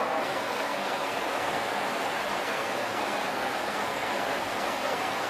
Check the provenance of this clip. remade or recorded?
remade